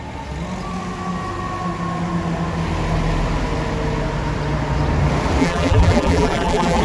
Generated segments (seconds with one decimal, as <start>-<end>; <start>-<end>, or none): 5.4-6.8